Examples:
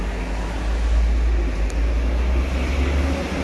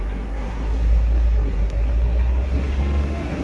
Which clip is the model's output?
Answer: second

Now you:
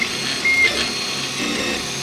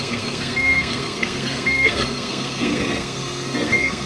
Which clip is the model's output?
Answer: second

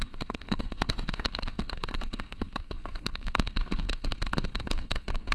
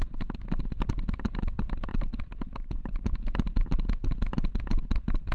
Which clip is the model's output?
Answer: first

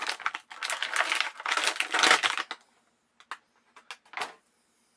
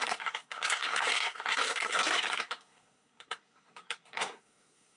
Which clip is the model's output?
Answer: second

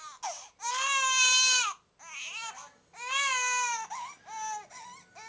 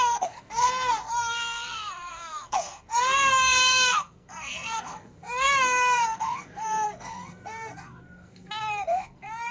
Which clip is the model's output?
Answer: second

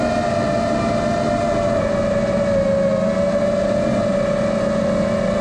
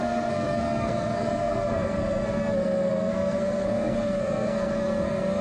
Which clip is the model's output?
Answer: second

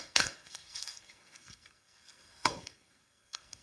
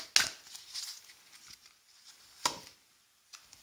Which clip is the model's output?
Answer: first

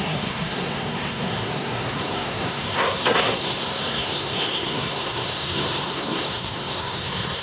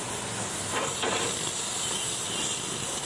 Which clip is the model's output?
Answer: first